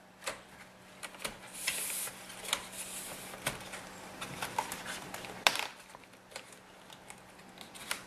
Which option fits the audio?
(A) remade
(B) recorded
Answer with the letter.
B